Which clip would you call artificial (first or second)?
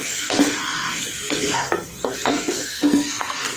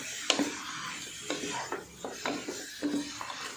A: first